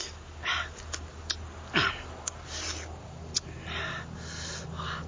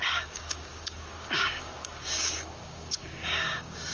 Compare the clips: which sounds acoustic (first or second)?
first